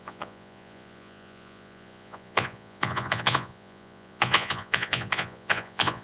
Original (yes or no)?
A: no